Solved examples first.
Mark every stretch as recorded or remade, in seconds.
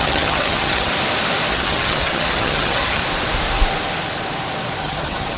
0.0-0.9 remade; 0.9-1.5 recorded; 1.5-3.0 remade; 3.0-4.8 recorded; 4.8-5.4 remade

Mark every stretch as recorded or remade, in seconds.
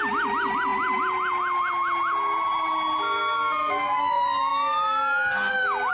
0.0-5.9 recorded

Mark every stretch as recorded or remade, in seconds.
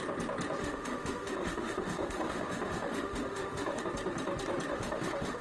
0.0-0.6 recorded; 0.6-3.8 remade; 3.8-4.7 recorded; 4.7-5.4 remade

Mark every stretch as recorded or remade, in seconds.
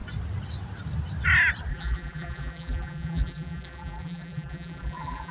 0.0-1.7 recorded; 1.7-5.3 remade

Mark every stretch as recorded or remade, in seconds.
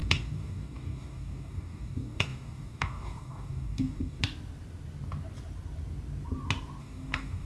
0.0-4.2 remade; 4.2-6.8 recorded; 6.8-7.5 remade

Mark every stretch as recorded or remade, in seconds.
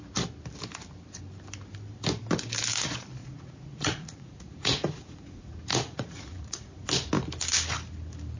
0.0-3.2 recorded; 3.2-6.8 remade; 6.8-8.4 recorded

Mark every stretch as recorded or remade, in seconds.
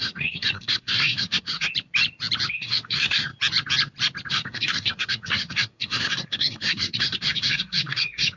0.0-1.7 remade; 1.7-2.5 recorded; 2.5-3.3 remade; 3.3-4.3 recorded; 4.3-8.4 remade